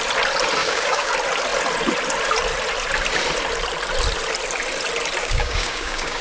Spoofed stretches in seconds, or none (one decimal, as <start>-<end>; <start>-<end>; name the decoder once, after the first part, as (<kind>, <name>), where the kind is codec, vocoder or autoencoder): 0.6-1.1 (codec, DAC); 5.2-6.2